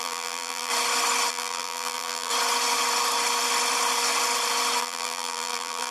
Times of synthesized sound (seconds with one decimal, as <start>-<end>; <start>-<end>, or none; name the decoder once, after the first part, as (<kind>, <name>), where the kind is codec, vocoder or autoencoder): 0.0-0.7 (vocoder, BigVGAN v2); 1.3-2.3; 4.8-5.9